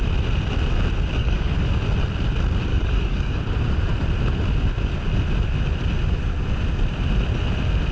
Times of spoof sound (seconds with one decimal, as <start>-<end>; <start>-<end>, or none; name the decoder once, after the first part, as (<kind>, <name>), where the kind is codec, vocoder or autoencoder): 1.2-1.7 (codec, DAC); 2.7-3.4